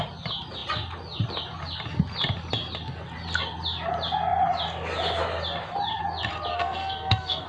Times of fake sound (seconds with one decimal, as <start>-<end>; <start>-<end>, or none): 6.5-7.5